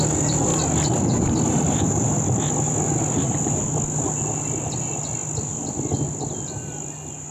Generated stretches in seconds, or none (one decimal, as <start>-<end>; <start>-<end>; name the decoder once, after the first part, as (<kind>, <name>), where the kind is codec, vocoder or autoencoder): none

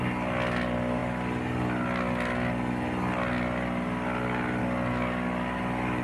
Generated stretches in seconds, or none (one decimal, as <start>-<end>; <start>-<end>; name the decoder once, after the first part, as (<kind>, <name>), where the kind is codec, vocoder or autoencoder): none

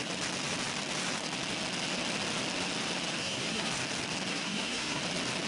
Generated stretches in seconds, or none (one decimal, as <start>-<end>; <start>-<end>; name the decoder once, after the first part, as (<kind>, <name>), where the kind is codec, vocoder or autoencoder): 3.2-3.7 (codec, SNAC); 4.3-5.0

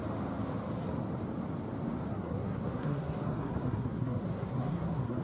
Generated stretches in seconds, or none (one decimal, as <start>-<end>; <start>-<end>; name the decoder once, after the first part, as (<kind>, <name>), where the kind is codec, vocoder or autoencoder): 2.1-5.2 (codec, SNAC)

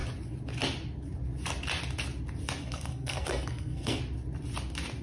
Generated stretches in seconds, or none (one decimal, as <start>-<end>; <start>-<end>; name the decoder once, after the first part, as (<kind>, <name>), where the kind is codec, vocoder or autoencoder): 2.6-4.0 (codec, SNAC)

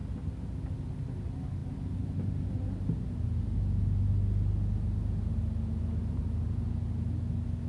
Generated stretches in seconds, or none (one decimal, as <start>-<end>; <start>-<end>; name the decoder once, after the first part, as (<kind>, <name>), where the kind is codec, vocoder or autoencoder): none

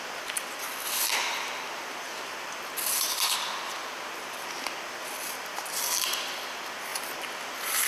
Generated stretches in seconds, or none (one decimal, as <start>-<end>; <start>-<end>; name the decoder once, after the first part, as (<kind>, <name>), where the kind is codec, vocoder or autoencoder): none